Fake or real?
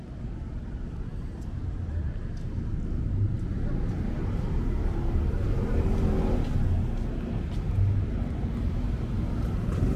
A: real